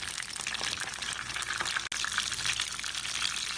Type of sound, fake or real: real